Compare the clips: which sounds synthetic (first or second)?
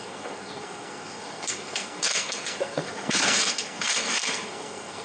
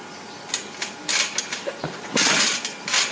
first